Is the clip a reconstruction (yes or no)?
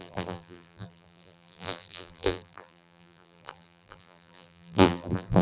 yes